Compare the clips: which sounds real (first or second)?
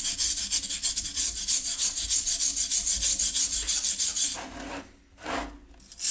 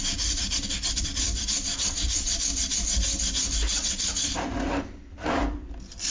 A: first